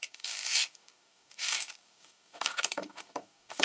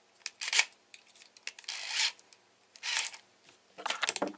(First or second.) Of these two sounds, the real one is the second